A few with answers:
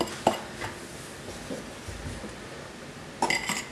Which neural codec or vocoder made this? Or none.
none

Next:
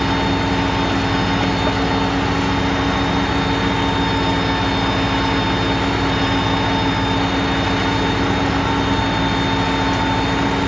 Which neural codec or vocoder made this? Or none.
none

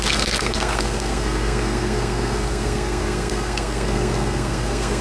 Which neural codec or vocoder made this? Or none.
codec, SNAC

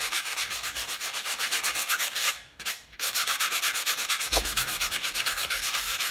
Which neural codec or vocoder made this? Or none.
codec, DAC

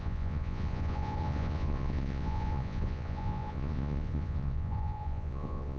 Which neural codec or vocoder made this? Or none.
vocoder, Vocos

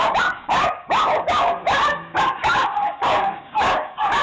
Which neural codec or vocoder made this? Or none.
codec, DAC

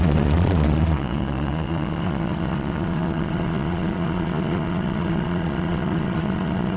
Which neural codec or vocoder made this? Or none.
vocoder, Vocos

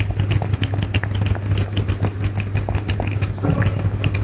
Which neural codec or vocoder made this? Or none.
none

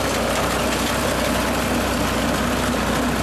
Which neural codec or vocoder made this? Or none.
none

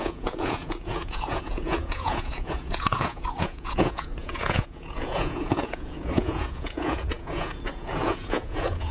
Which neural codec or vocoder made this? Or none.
vocoder, Vocos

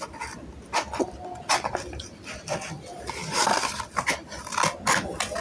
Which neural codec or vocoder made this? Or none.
none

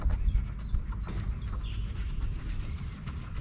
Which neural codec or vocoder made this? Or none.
none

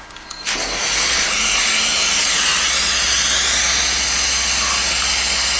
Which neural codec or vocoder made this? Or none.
none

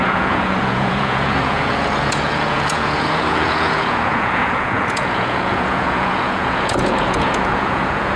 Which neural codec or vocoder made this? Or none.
vocoder, Vocos